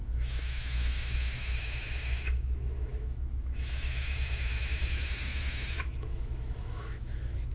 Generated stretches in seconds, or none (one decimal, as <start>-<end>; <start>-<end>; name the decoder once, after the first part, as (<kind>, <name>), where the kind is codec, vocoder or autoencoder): 0.0-7.5 (autoencoder, DAC-VAE)